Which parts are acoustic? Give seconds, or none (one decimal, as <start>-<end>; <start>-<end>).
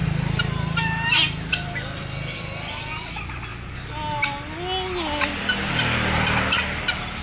2.9-7.2